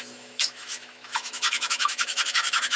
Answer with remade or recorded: remade